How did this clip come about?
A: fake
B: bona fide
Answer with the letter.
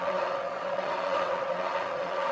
A